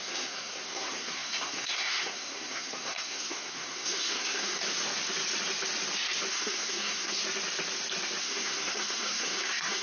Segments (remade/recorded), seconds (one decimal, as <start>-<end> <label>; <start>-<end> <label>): 0.0-4.6 remade; 4.6-6.3 recorded; 6.3-7.2 remade; 7.2-8.2 recorded; 8.2-9.8 remade